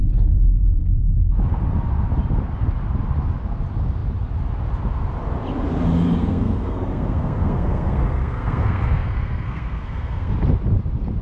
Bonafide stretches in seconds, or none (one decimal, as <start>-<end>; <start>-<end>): 0.0-6.2; 10.3-11.2